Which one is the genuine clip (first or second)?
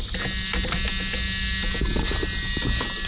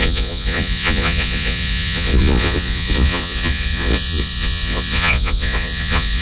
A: first